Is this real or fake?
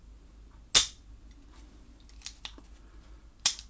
real